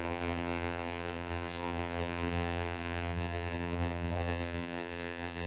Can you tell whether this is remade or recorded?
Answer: remade